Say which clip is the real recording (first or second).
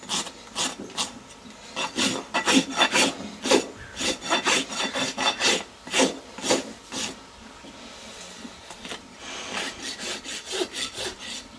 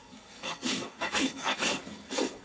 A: first